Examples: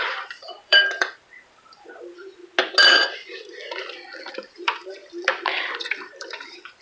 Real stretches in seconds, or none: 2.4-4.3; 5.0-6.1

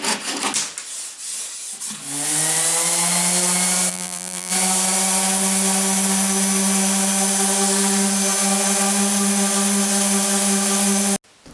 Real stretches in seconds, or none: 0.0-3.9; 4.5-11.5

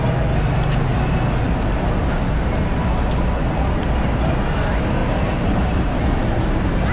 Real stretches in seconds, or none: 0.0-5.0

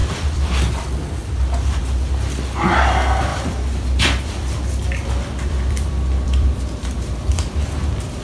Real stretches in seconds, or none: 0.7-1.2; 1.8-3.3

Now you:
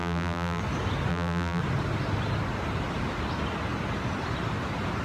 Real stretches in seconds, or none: 0.6-1.1; 1.6-5.0